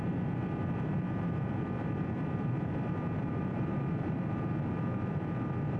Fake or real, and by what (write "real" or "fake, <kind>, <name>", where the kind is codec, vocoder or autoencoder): fake, vocoder, BigVGAN v2